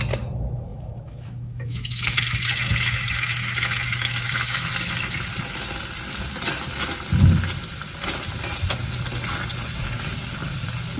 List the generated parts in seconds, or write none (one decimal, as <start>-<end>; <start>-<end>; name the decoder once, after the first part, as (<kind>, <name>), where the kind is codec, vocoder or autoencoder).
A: 0.7-4.7 (autoencoder, DAC-VAE)

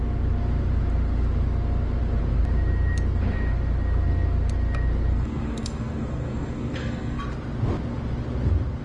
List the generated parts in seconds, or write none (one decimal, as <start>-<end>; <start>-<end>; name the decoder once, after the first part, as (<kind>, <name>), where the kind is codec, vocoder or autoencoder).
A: 5.1-7.2 (codec, SNAC)

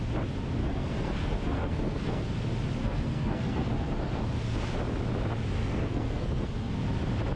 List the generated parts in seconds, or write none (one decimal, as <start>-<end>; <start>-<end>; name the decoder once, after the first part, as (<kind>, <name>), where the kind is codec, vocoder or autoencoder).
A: 0.6-2.4 (codec, SNAC); 2.8-4.2; 5.6-6.7

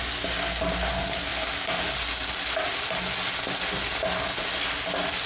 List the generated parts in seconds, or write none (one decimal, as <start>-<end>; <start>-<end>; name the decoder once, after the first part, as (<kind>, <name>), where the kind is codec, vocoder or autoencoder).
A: none

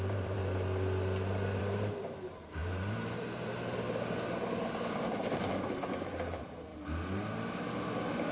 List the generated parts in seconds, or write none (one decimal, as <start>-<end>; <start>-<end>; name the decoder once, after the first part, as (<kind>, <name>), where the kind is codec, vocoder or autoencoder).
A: 0.0-0.4 (vocoder, BigVGAN v2); 1.6-6.7

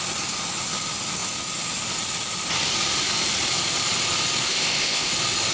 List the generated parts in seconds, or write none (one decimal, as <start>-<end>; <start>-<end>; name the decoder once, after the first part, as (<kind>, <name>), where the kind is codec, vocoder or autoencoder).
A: 4.5-5.1 (codec, ZipCodec)